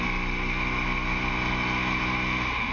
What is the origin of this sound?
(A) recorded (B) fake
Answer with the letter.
A